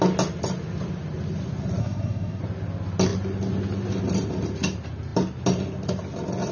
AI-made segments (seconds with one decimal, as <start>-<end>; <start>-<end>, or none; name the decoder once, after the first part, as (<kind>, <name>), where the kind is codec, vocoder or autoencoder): 1.8-2.4 (codec, SNAC)